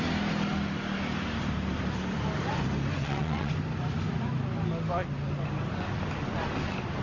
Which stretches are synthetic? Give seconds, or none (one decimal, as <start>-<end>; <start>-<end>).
3.0-3.5